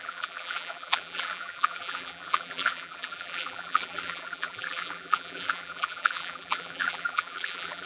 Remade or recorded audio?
remade